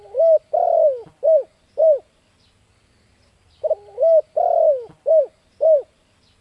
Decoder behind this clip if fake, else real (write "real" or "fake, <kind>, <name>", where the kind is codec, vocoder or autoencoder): real